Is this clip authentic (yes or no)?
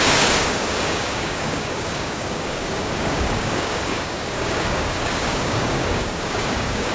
no